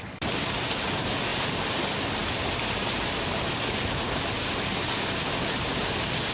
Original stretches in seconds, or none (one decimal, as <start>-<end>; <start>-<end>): 0.0-6.3